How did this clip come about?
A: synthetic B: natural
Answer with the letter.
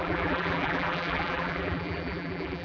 A